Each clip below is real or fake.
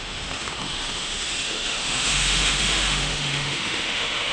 fake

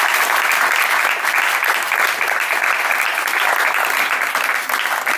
real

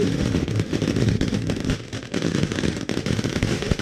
fake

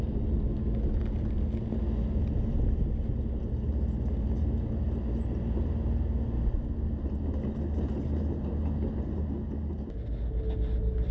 real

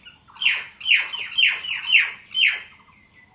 real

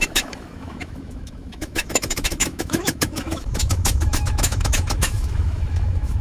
fake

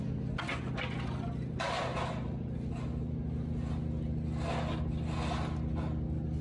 real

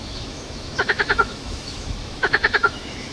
fake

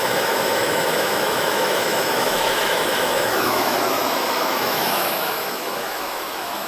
fake